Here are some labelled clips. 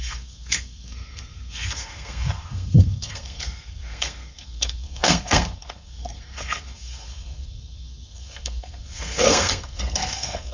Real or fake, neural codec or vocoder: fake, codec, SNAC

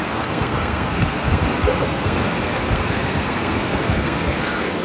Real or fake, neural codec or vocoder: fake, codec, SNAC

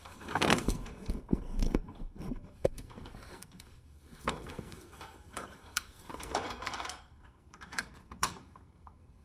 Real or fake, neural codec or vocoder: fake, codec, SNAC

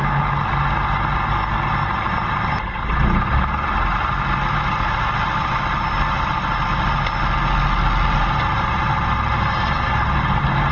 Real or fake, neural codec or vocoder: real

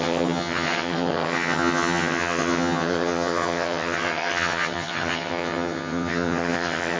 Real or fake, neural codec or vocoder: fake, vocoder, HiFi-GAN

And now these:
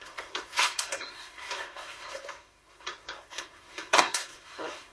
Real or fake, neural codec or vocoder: fake, codec, SNAC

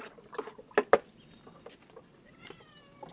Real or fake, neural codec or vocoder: real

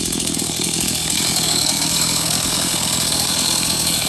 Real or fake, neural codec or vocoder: fake, codec, SNAC